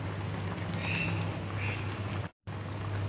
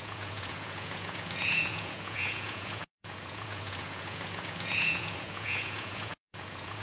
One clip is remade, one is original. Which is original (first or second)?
first